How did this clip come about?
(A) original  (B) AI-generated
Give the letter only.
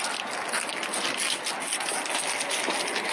A